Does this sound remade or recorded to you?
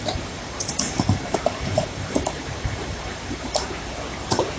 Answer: remade